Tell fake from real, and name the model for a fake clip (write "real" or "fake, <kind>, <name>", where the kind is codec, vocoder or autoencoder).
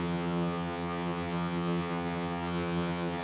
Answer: fake, vocoder, HiFi-GAN